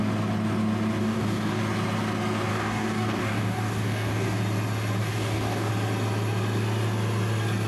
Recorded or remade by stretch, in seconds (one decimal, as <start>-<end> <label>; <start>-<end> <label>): 0.0-1.0 recorded; 1.0-1.6 remade; 1.6-2.5 recorded; 2.5-4.4 remade; 4.4-5.0 recorded; 5.0-5.7 remade; 5.7-7.7 recorded